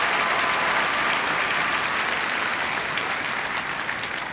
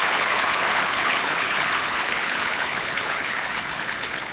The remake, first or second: second